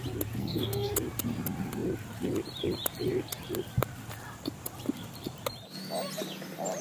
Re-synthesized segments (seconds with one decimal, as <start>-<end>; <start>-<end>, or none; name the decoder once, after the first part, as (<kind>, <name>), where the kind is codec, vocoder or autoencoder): 0.4-0.9 (codec, SNAC)